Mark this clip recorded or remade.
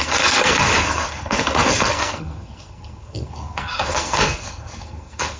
remade